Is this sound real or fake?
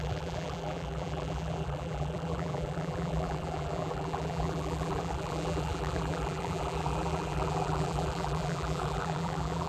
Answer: fake